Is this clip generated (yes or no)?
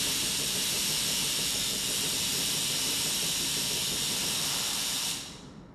no